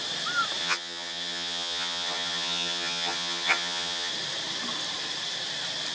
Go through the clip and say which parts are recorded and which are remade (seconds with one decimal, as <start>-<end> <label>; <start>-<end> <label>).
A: 0.0-0.6 recorded; 0.6-4.1 remade; 4.1-5.9 recorded